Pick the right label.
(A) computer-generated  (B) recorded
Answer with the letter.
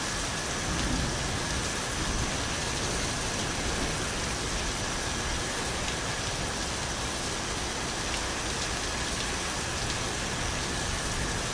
B